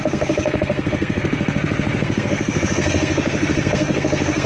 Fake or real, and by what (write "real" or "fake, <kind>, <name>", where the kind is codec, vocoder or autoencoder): fake, codec, SNAC